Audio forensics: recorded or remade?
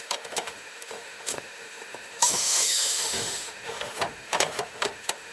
remade